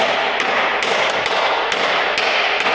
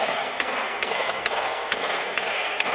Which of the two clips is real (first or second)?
first